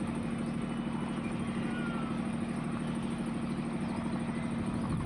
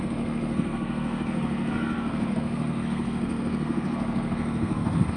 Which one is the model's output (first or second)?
second